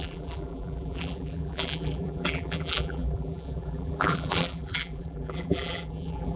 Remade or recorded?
remade